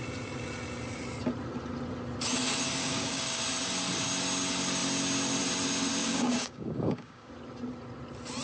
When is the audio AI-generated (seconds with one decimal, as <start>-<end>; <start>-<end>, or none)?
2.8-3.4; 6.0-7.3